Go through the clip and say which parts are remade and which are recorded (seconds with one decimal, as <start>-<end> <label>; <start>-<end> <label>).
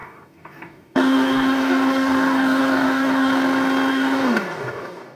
0.0-3.3 remade; 3.3-3.9 recorded; 3.9-5.2 remade